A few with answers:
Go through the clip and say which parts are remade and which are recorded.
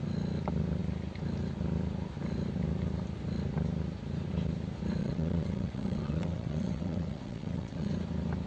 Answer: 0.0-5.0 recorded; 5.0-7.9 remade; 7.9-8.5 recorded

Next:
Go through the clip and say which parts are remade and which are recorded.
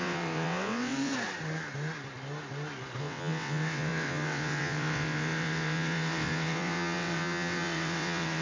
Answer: 0.0-1.1 remade; 1.1-3.0 recorded; 3.0-8.4 remade